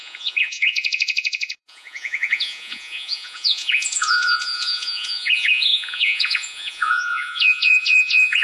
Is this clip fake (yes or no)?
yes